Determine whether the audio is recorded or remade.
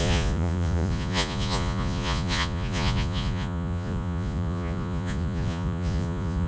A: remade